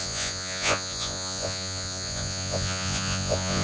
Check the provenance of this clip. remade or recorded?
remade